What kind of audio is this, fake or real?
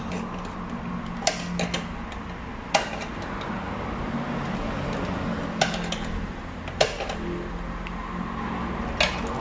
real